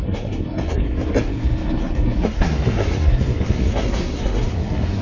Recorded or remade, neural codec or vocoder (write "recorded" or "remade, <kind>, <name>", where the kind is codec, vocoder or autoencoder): remade, codec, SNAC